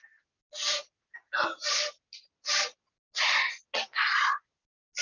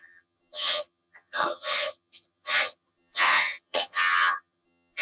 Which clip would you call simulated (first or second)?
second